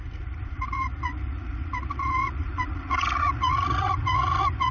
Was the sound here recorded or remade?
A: remade